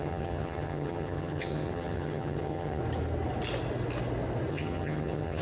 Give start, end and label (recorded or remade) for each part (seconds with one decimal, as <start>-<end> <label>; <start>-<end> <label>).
0.0-2.8 remade; 2.8-4.5 recorded; 4.5-5.4 remade